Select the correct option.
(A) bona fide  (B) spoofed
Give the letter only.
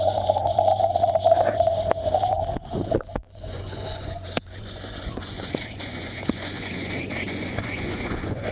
B